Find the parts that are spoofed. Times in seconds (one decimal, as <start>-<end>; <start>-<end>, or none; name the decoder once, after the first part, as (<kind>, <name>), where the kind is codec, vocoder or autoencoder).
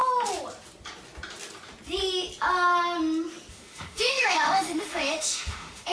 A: 3.5-5.9 (autoencoder, DAC-VAE)